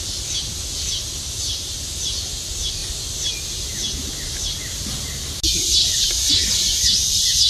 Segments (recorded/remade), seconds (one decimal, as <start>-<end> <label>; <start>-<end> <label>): 0.0-7.5 recorded